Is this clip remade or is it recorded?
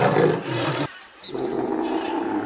recorded